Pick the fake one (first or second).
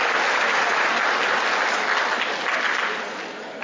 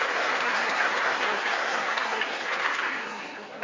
second